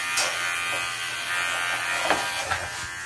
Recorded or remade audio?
recorded